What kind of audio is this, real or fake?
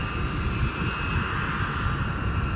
real